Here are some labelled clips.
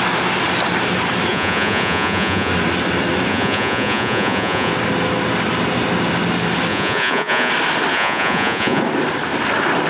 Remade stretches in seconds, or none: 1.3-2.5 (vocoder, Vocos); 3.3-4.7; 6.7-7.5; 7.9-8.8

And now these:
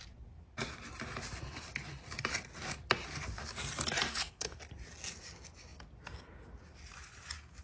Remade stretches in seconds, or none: 4.1-4.6 (codec, SNAC)